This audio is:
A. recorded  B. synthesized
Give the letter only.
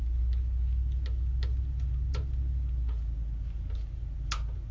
A